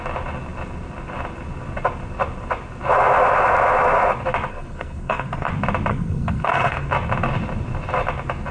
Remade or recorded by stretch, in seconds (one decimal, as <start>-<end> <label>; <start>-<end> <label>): 0.0-4.5 recorded; 4.5-5.5 remade; 5.5-5.9 recorded; 5.9-6.9 remade; 6.9-8.5 recorded